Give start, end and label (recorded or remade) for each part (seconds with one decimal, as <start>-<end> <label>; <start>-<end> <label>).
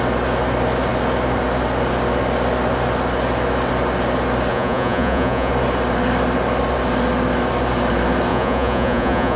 0.0-4.5 recorded; 4.5-5.5 remade; 5.5-8.3 recorded; 8.3-9.4 remade